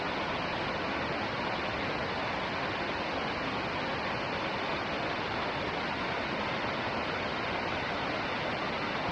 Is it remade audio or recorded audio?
recorded